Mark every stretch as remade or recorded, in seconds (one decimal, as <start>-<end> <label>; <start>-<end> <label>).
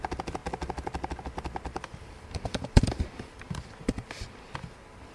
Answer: 0.0-1.7 recorded; 1.7-5.1 remade